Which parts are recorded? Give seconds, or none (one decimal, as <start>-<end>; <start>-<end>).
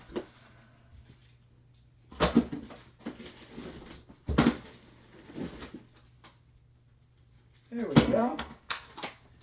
0.0-8.0; 8.9-9.4